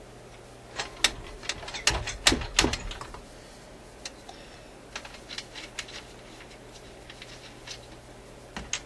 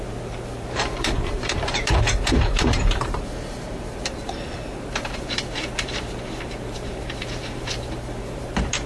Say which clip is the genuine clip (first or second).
first